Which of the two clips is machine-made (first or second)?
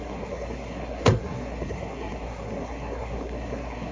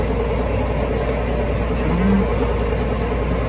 first